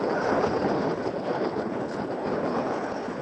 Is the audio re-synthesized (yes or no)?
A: yes